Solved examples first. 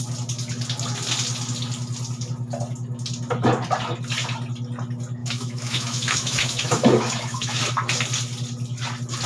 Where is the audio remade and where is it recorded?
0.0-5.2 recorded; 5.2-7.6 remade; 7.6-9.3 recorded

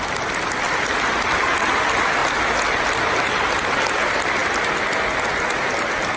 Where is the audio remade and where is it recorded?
0.0-6.2 recorded

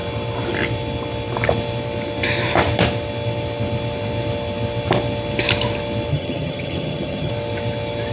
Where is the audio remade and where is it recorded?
0.0-6.1 recorded; 6.1-7.3 remade; 7.3-8.1 recorded